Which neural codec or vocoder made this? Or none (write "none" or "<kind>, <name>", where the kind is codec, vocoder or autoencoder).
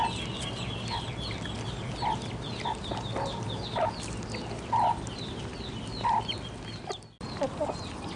none